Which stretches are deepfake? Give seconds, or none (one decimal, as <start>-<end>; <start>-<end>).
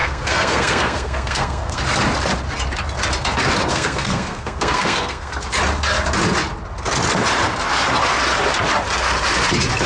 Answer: 0.0-1.8; 3.7-5.3